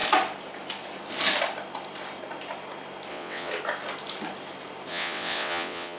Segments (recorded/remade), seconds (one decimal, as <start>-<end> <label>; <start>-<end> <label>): 0.0-3.1 recorded; 3.1-3.5 remade; 3.5-4.9 recorded; 4.9-6.0 remade

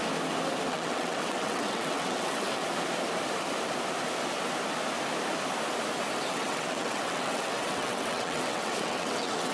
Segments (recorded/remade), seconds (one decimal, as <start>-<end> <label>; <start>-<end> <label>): 0.0-0.7 recorded; 0.7-2.6 remade; 2.6-6.3 recorded; 6.3-9.5 remade

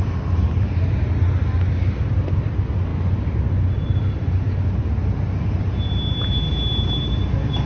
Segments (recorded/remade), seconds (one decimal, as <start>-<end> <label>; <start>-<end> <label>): 0.0-7.7 recorded